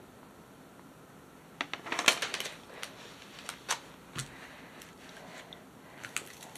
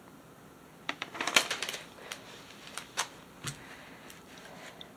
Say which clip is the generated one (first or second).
second